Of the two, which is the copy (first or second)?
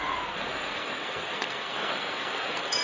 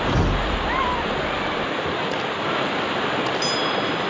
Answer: first